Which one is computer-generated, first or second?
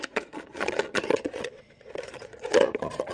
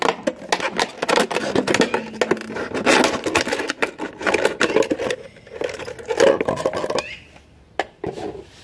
first